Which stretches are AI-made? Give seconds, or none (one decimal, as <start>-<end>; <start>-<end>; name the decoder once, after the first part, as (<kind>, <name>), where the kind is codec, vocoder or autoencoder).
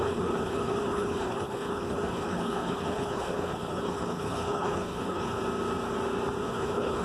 0.0-5.4 (codec, HILCodec); 6.4-7.0